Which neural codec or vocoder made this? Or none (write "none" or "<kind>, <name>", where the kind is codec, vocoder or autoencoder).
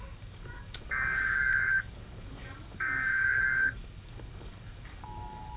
codec, DAC